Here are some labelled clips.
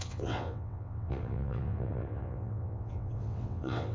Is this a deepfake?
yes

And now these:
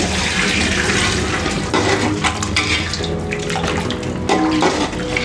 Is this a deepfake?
no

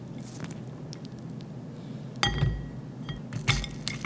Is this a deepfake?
no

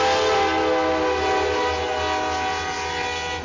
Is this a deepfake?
no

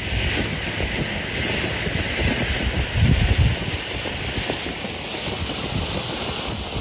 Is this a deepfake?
no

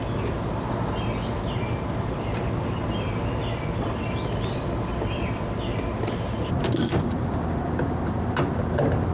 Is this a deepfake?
no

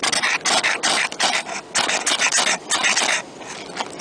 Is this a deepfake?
no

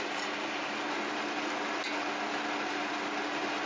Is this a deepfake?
no